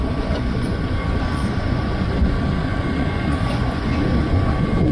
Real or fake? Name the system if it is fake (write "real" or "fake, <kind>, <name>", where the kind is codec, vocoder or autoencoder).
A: fake, vocoder, Vocos